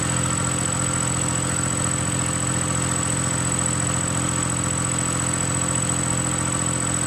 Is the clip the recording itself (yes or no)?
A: no